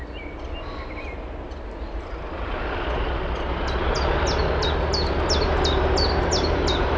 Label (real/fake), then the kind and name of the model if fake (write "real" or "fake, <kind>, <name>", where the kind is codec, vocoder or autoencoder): real